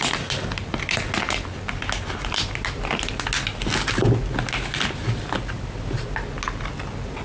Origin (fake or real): real